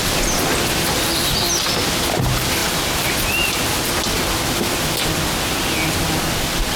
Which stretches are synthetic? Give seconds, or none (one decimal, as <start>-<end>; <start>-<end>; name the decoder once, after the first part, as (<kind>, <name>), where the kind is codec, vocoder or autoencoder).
none